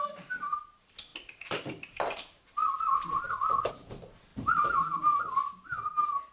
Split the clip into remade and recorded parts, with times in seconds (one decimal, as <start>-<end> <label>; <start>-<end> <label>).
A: 0.0-4.3 recorded; 4.3-5.2 remade; 5.2-6.3 recorded